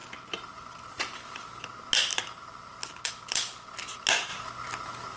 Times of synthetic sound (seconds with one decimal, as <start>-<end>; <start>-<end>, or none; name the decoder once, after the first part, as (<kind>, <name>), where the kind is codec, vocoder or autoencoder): none